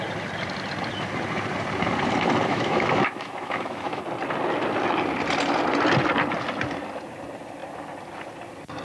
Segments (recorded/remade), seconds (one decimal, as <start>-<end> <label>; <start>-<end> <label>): 0.0-2.5 recorded; 2.5-4.0 remade; 4.0-8.8 recorded